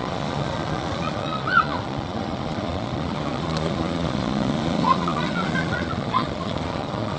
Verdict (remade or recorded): remade